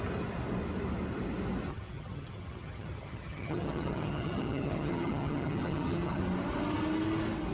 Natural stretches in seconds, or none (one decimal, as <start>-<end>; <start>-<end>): 0.0-1.7; 6.2-7.5